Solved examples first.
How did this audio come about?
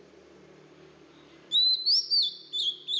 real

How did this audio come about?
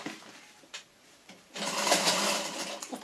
real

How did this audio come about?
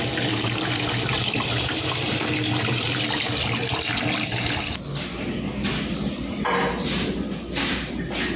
real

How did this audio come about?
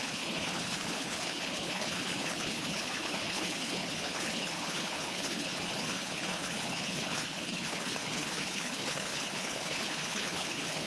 fake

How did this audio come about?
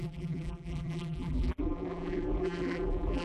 fake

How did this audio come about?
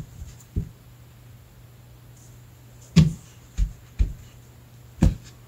real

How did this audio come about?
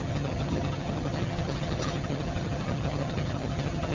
fake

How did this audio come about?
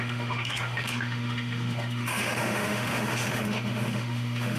fake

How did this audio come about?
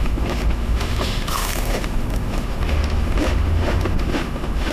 fake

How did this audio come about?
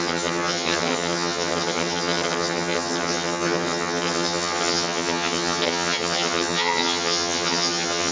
fake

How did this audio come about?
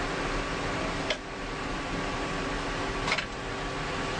real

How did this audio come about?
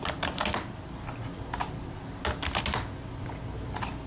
real